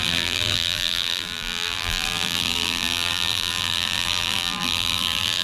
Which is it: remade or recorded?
remade